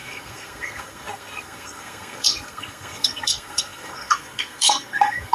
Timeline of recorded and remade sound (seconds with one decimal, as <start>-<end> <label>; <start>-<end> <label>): 0.0-5.3 remade